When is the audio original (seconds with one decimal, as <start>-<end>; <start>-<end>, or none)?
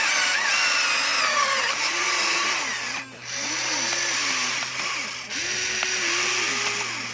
0.0-7.1